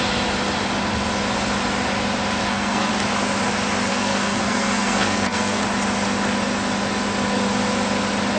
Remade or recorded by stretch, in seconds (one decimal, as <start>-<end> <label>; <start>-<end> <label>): 0.0-2.4 recorded; 2.4-2.9 remade; 2.9-3.9 recorded; 3.9-5.6 remade; 5.6-8.4 recorded